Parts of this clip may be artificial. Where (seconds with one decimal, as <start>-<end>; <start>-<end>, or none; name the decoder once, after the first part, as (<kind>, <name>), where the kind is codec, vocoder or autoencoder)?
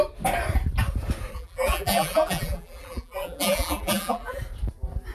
1.3-4.4 (vocoder, BigVGAN v2)